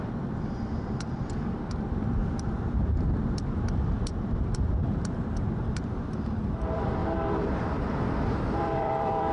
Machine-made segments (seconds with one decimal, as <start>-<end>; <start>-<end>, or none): 0.0-9.3